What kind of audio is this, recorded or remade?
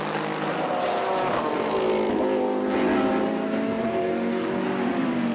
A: recorded